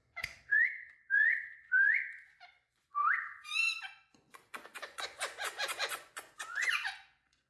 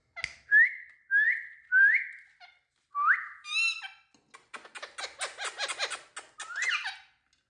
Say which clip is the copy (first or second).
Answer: first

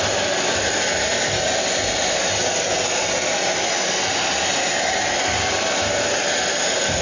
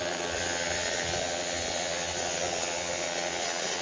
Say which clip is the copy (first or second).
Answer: second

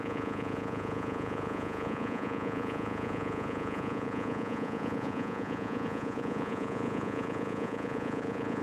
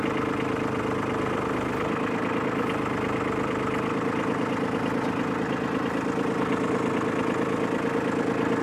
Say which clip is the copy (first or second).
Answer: first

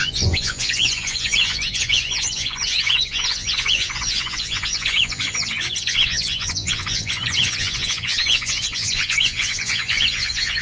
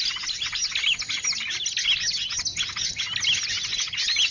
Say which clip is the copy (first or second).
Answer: first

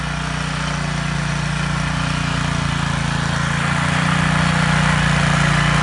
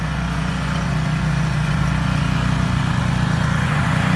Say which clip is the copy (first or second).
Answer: second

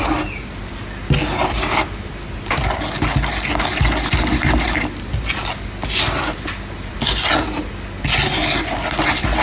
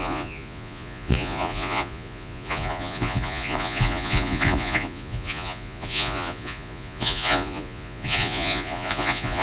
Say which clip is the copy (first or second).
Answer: second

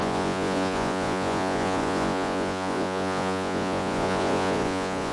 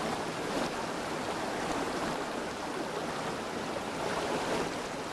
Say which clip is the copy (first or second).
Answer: first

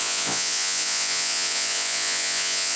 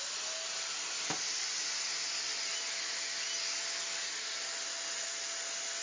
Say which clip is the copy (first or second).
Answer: first